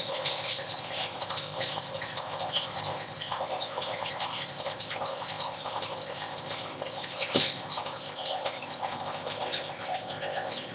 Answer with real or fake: fake